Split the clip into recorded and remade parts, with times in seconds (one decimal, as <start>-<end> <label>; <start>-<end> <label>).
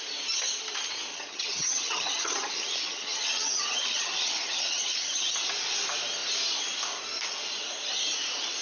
0.0-1.1 recorded; 1.1-5.3 remade; 5.3-8.6 recorded